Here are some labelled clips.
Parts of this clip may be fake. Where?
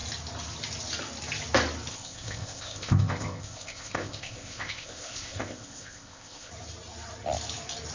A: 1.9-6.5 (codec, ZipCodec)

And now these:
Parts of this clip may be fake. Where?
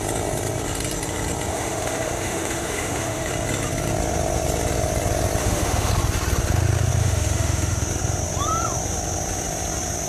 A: 1.5-3.3 (autoencoder, DAC-VAE); 5.4-5.9; 7.0-7.8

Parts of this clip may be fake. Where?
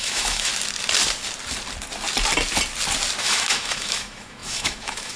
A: 0.0-0.5 (autoencoder, DAC-VAE); 3.2-5.2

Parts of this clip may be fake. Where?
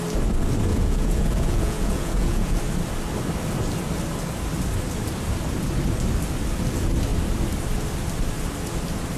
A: 0.7-2.6 (vocoder, Vocos)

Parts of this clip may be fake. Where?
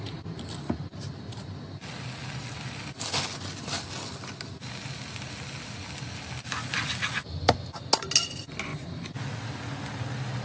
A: none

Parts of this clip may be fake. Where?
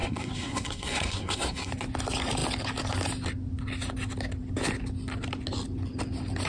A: 0.0-1.7 (codec, SNAC)